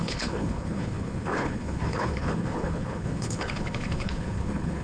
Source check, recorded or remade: remade